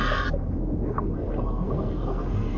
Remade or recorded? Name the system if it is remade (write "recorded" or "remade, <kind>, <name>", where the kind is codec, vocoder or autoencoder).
remade, codec, SNAC